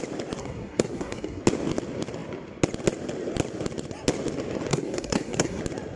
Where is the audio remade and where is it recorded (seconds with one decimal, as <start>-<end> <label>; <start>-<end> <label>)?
0.0-0.4 recorded; 0.4-1.4 remade; 1.4-4.7 recorded; 4.7-5.6 remade; 5.6-6.0 recorded